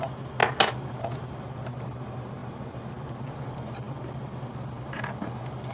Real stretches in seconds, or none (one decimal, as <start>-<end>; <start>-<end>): 0.0-5.7